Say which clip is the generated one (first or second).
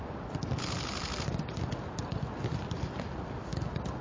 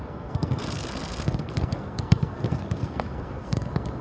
second